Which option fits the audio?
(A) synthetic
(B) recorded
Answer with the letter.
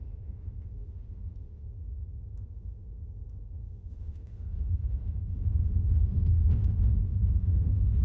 A